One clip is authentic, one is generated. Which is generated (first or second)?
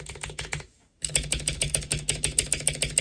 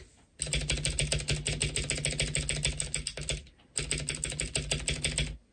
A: first